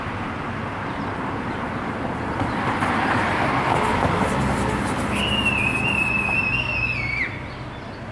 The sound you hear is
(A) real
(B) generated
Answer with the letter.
A